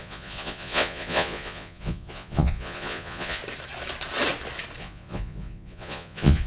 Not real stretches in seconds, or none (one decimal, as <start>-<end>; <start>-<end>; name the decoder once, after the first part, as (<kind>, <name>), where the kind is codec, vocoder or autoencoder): 0.0-3.4 (vocoder, Vocos); 4.8-6.5